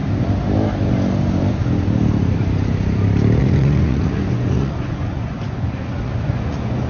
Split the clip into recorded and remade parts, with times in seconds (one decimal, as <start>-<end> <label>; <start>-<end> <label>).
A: 0.0-3.4 recorded; 3.4-6.9 remade